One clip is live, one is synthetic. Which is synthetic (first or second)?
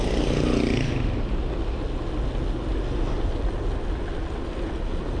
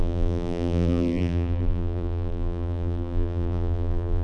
second